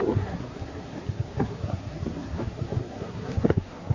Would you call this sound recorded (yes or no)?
no